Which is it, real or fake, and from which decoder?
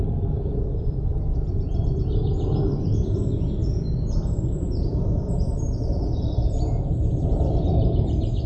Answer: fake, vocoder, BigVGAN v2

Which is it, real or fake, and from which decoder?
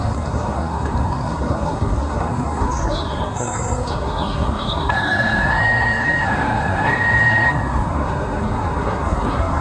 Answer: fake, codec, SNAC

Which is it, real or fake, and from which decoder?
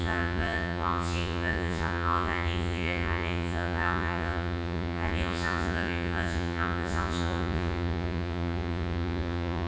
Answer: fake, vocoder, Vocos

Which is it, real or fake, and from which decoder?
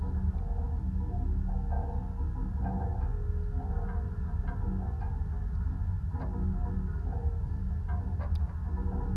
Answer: real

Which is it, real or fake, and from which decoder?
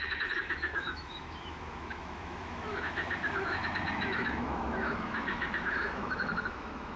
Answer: fake, autoencoder, DAC-VAE